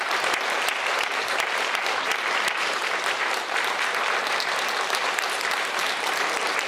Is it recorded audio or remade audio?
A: remade